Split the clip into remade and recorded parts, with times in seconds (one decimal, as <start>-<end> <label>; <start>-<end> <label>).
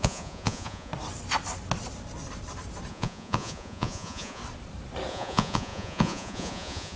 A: 0.0-0.9 remade; 0.9-2.9 recorded; 2.9-4.4 remade; 4.4-5.1 recorded; 5.1-7.0 remade